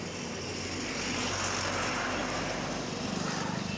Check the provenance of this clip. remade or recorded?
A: recorded